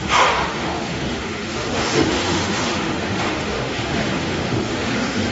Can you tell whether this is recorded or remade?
remade